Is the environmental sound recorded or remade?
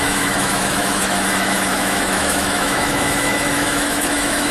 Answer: remade